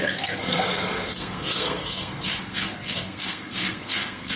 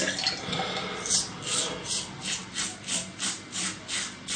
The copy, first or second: first